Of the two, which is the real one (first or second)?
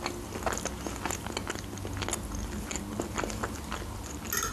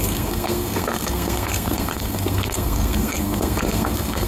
first